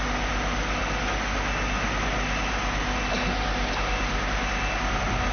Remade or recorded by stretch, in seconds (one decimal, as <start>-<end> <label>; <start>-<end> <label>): 0.0-5.3 recorded